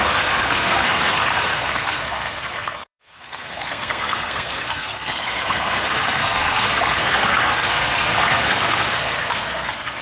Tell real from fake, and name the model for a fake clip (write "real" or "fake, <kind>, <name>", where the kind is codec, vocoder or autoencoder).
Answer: fake, codec, SNAC